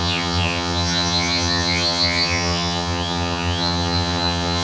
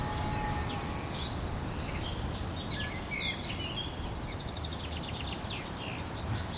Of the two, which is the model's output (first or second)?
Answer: first